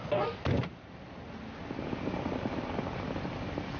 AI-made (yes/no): no